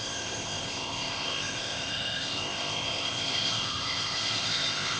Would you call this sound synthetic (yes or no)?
yes